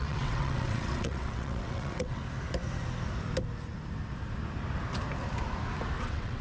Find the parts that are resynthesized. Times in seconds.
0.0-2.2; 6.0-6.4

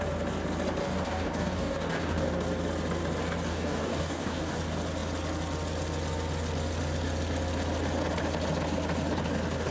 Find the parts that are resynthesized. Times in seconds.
0.8-2.3; 3.5-4.6

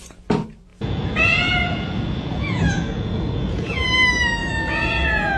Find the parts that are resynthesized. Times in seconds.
0.7-3.9; 4.4-5.4

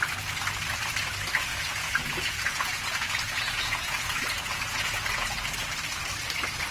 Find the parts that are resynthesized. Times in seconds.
1.5-5.5

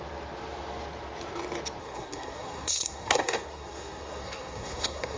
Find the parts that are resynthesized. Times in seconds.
1.8-5.2

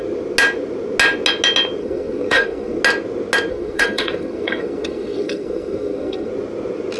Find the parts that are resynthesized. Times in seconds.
1.8-2.8; 3.5-6.3